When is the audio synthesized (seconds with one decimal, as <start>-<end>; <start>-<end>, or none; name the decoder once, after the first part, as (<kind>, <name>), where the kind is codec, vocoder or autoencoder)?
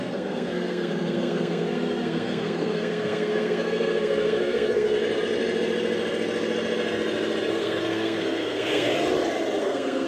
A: 0.0-5.0 (codec, SNAC); 7.5-8.9; 9.6-10.1